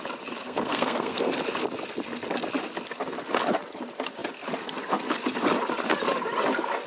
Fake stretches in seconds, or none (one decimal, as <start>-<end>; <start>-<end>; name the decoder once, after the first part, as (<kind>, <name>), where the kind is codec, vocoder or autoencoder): 0.4-1.3 (codec, SNAC)